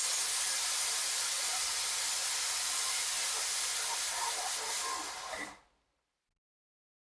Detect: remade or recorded recorded